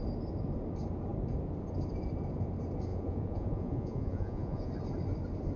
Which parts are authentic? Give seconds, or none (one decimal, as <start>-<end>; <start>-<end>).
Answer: 0.0-2.9; 4.7-5.6